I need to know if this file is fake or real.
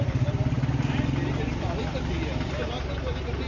real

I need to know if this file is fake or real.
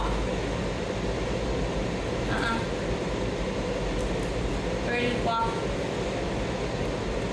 real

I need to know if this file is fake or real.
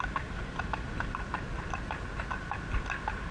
real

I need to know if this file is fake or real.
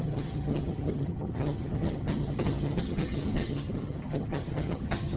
fake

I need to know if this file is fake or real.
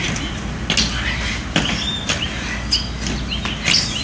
real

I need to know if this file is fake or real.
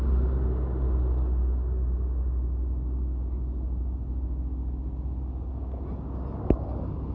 real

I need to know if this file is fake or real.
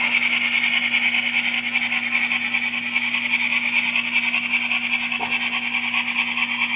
real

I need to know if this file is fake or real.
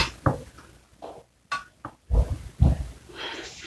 real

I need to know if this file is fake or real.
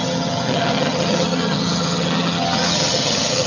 fake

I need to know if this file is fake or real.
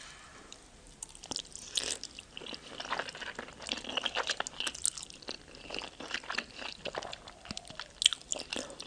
real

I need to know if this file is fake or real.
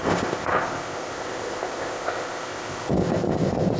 fake